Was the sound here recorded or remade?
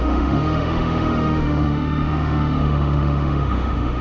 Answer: remade